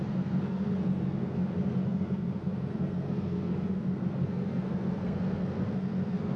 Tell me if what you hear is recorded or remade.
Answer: remade